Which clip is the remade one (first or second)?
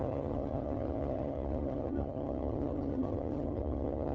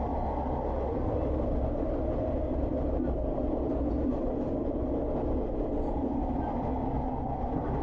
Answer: first